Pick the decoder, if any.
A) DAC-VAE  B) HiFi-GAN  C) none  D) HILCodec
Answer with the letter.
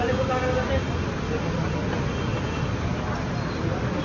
C